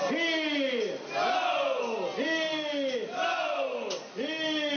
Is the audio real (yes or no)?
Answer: yes